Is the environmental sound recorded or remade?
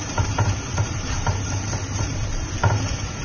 remade